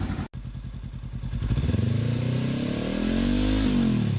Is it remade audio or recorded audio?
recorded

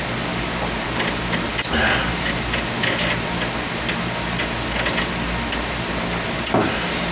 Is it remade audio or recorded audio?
recorded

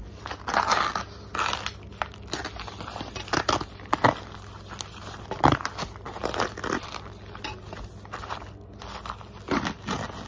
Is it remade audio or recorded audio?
recorded